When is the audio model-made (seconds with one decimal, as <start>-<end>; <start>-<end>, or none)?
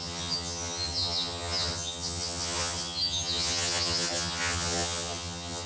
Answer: 0.0-5.7